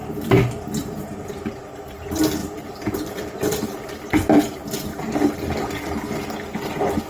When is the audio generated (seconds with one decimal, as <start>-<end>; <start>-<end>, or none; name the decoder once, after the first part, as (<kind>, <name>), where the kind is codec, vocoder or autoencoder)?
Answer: 0.0-1.3 (vocoder, BigVGAN v2); 2.4-4.8